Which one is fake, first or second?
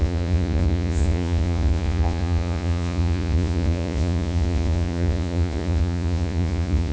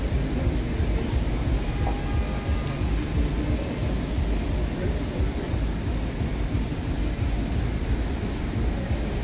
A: first